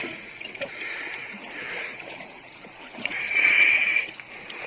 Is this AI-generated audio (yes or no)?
yes